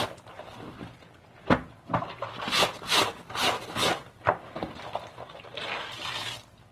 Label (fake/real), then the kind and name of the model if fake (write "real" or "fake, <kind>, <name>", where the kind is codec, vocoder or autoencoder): real